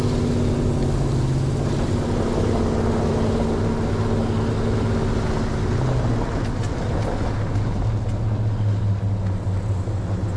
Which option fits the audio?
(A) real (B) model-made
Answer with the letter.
A